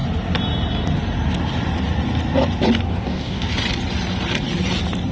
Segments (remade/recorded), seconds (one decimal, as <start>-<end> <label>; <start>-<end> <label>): 0.0-2.9 recorded; 2.9-3.5 remade; 3.5-5.1 recorded